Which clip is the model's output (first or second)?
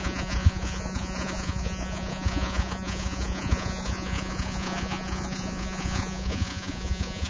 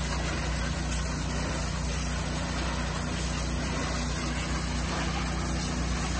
first